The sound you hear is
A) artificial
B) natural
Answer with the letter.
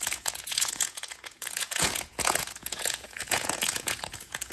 A